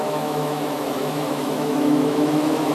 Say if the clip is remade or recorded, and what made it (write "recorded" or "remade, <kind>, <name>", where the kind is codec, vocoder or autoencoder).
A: remade, autoencoder, DAC-VAE